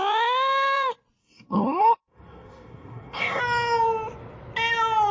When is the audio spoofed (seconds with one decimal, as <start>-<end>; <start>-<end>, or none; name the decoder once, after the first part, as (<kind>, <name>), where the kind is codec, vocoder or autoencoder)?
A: 1.2-3.4 (codec, SNAC)